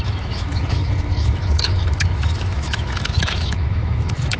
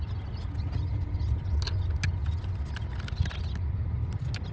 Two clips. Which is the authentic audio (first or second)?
second